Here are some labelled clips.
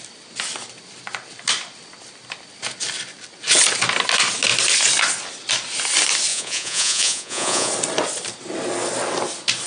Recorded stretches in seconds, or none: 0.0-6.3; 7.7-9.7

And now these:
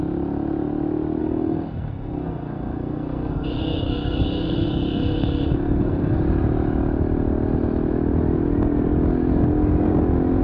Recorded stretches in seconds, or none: 0.0-1.2; 6.2-10.4